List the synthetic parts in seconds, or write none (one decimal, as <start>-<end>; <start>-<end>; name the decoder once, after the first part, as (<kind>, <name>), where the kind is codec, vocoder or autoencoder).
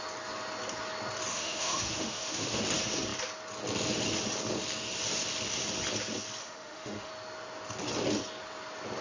1.3-2.6 (autoencoder, DAC-VAE); 6.4-7.1